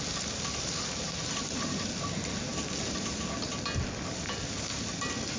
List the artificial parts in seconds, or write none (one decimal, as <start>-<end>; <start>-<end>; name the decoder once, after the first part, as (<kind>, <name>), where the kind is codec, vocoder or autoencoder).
0.0-2.5 (vocoder, BigVGAN v2); 4.9-5.4